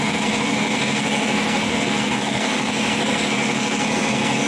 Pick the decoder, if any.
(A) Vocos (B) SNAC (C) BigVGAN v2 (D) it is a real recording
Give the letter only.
B